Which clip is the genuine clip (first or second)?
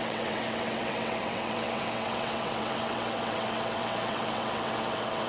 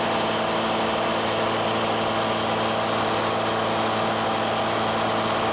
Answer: second